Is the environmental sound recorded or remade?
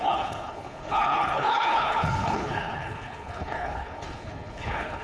remade